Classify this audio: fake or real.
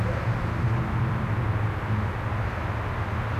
real